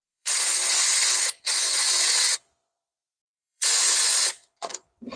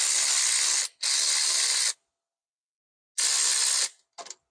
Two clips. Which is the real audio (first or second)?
second